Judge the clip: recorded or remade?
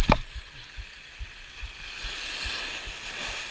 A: recorded